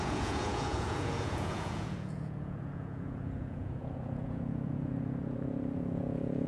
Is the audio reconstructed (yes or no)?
yes